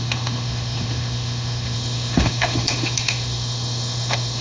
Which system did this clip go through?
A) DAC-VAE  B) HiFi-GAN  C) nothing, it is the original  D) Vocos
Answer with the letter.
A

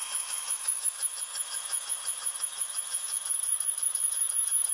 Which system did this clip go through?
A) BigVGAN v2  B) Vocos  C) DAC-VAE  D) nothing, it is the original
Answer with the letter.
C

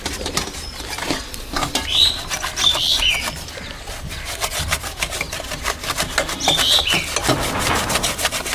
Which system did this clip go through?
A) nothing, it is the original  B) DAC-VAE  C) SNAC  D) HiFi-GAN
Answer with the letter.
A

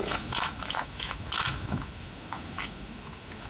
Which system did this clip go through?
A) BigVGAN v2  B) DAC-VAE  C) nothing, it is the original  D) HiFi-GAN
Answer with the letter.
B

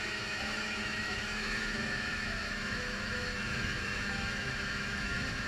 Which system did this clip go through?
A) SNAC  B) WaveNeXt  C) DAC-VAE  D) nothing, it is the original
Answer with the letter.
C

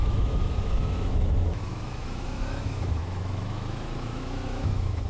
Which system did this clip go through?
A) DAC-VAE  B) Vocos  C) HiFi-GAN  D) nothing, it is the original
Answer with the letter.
A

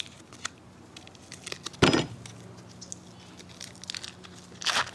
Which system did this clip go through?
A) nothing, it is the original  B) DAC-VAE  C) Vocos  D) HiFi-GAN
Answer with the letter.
A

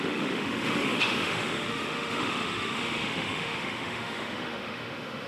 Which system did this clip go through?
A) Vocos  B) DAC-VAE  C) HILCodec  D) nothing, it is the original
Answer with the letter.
B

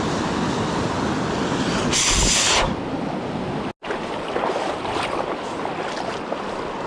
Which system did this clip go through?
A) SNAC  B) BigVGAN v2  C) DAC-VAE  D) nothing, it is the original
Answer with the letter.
D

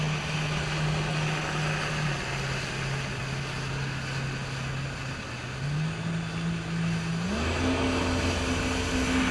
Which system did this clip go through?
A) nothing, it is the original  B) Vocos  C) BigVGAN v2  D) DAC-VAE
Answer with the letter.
A